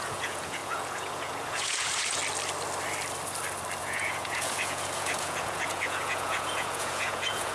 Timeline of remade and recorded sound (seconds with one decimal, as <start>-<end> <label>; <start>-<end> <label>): 0.0-2.2 remade; 2.2-3.8 recorded; 3.8-7.5 remade